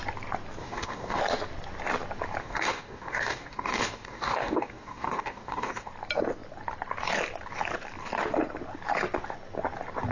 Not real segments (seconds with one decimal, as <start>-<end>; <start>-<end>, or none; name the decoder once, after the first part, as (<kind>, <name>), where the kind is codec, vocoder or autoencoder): 0.6-1.2 (codec, DAC); 2.4-5.9